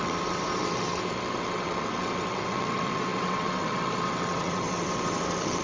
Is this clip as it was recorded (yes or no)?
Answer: no